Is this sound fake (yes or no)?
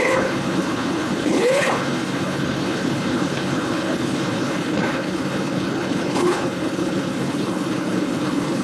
yes